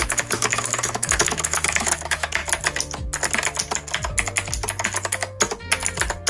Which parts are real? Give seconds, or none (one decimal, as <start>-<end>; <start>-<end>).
2.4-6.3